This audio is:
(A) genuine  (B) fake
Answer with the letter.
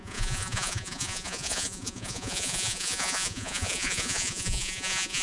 B